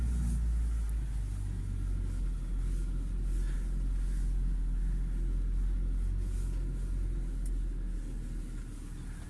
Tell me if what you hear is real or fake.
real